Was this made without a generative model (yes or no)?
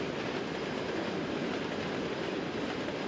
yes